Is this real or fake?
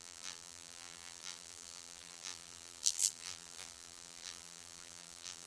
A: fake